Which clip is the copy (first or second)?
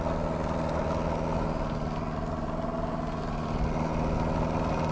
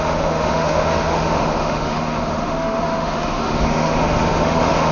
second